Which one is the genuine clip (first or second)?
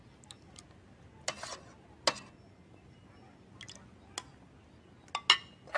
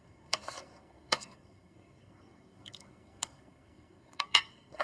first